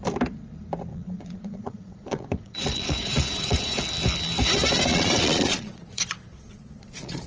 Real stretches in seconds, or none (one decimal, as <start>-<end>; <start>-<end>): 0.0-0.9; 3.8-4.9